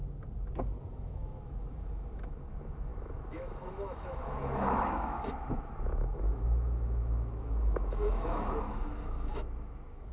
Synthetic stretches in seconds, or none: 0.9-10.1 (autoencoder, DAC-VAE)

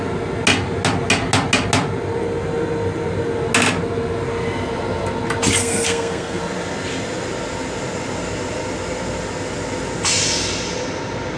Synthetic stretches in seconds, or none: 5.6-6.4 (codec, SNAC)

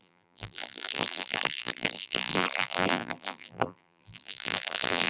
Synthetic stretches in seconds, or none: 0.0-5.1 (vocoder, BigVGAN v2)

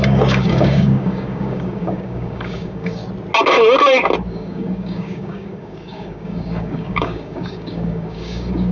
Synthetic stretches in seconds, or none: 0.0-3.0 (codec, DAC); 4.3-8.7

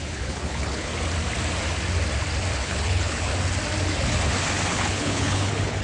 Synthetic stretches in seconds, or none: 0.0-0.9 (codec, HILCodec); 2.6-3.3; 4.7-5.8

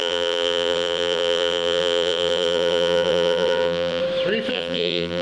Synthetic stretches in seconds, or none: 0.0-4.0 (vocoder, BigVGAN v2); 4.5-5.2

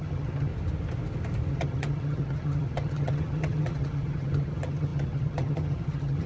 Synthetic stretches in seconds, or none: 0.0-0.5 (vocoder, HiFi-GAN); 1.5-6.3